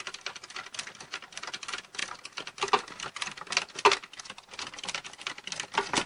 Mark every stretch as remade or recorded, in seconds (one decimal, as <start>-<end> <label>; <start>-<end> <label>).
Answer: 0.0-6.1 recorded